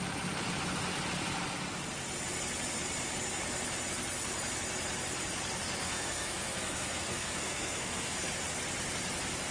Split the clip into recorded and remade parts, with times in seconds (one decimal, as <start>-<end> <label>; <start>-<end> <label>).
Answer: 0.0-5.8 recorded; 5.8-8.3 remade; 8.3-9.5 recorded